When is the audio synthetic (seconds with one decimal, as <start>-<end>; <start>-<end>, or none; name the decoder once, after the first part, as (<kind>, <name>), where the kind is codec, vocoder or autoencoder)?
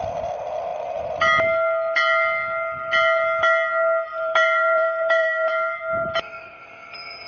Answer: 4.1-7.3 (vocoder, BigVGAN v2)